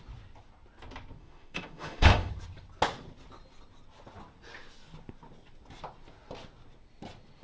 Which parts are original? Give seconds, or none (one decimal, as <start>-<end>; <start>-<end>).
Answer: 0.0-1.2; 2.3-7.4